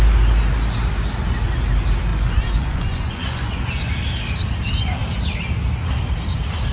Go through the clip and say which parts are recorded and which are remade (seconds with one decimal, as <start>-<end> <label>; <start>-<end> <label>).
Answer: 0.0-2.1 recorded; 2.1-3.7 remade; 3.7-6.7 recorded